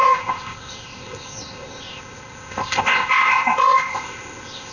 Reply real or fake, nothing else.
fake